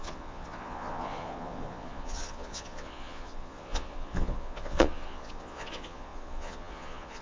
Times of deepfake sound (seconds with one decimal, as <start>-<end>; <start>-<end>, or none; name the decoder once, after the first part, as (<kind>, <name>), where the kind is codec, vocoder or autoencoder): 0.0-7.2 (vocoder, Vocos)